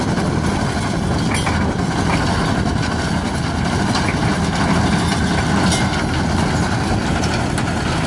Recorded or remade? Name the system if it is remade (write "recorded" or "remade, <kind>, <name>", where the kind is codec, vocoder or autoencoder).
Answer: recorded